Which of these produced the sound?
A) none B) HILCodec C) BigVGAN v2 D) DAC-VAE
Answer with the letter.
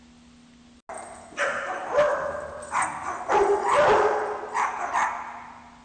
A